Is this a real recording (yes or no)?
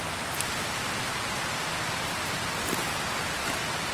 yes